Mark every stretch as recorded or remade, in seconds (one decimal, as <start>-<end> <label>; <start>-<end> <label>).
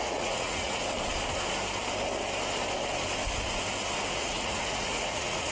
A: 0.0-0.8 remade; 0.8-4.1 recorded; 4.1-5.5 remade